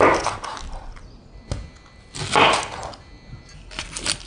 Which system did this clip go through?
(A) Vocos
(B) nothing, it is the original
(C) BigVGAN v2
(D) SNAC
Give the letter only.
B